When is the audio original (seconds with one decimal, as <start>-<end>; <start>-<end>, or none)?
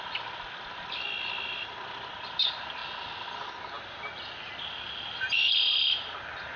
2.8-4.9